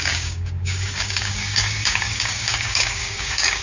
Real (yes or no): no